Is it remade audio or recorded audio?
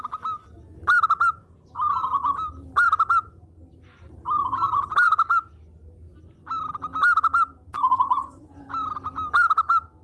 recorded